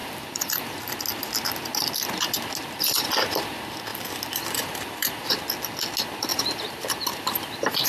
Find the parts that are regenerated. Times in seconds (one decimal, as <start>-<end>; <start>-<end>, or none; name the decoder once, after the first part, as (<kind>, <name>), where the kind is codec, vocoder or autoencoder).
0.0-0.8 (vocoder, BigVGAN v2); 3.9-5.4; 6.3-7.9